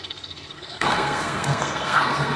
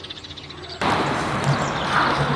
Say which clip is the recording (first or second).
second